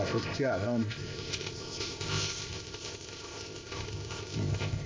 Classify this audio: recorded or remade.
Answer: remade